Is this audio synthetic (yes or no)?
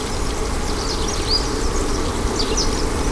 no